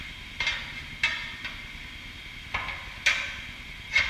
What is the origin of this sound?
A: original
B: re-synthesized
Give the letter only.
A